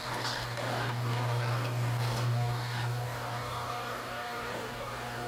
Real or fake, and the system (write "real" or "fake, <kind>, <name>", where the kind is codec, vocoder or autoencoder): fake, codec, DAC